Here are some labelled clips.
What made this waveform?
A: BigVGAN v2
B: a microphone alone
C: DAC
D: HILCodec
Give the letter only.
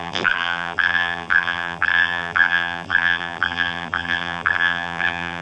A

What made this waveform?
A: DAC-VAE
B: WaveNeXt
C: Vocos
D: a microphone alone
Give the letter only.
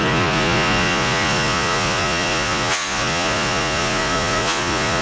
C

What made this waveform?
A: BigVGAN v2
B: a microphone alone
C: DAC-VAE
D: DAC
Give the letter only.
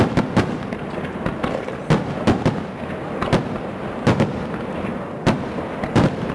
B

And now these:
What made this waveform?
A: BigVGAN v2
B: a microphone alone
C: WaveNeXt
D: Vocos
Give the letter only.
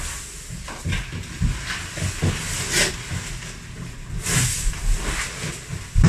B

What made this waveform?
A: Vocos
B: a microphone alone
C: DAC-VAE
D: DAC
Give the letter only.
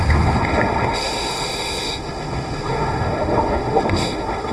C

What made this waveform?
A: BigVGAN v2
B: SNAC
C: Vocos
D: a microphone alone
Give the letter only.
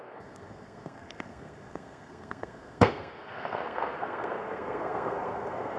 B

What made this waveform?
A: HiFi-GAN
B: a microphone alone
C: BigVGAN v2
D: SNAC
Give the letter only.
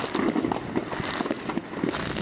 B